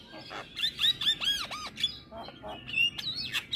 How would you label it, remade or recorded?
recorded